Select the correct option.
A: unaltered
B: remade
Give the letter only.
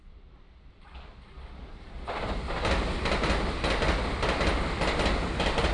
A